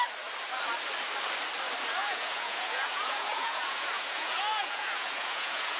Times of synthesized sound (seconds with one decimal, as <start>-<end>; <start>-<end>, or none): 2.0-5.8